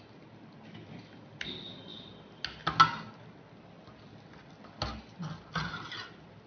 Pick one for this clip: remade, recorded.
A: recorded